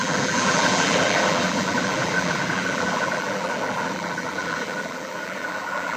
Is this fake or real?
fake